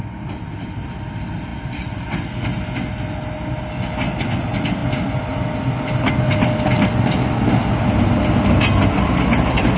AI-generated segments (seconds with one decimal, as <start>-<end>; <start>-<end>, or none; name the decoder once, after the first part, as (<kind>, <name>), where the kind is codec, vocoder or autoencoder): none